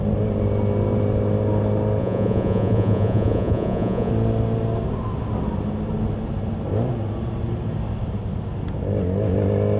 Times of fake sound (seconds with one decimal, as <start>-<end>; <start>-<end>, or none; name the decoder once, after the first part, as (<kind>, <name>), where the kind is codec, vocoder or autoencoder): 2.0-4.1 (vocoder, Vocos)